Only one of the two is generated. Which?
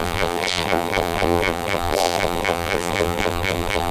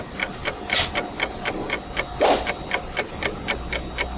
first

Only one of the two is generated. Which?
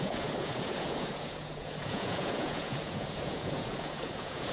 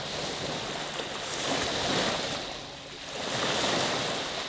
first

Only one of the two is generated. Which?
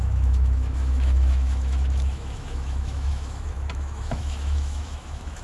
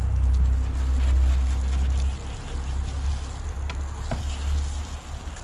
first